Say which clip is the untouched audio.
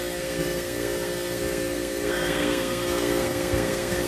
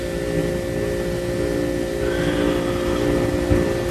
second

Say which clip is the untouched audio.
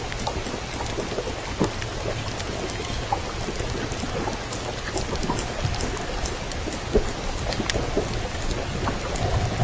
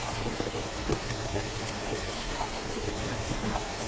first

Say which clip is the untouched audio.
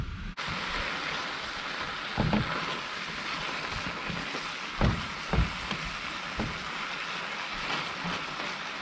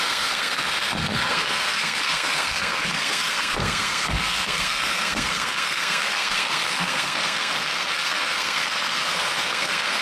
first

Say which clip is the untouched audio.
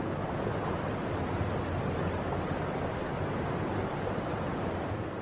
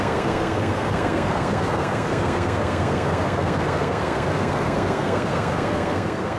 first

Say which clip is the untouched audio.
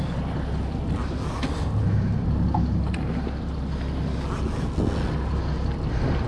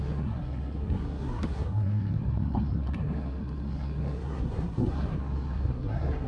first